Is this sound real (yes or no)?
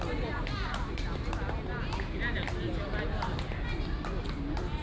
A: yes